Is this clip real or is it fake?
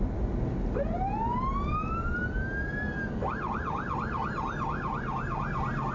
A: real